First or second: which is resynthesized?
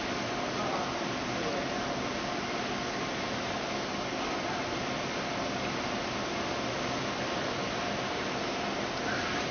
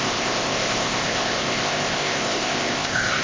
second